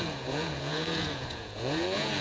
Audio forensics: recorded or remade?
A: remade